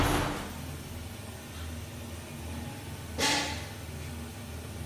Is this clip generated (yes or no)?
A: no